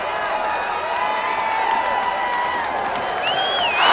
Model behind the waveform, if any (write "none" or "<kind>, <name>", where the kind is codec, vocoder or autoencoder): none